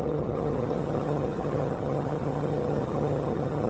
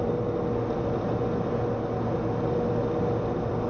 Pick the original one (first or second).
second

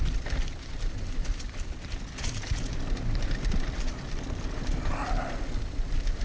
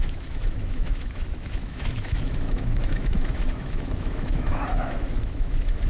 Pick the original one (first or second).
first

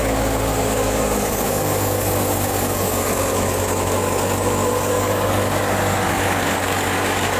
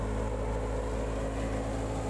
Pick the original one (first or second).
second